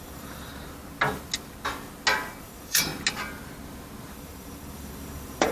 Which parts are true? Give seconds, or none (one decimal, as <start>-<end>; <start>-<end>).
0.5-2.4; 2.9-4.1